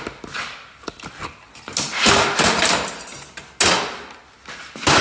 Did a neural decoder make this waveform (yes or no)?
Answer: no